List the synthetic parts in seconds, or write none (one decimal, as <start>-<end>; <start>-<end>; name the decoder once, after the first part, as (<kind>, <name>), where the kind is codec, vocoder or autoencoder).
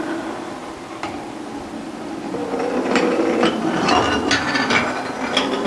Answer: 2.4-4.7 (vocoder, BigVGAN v2)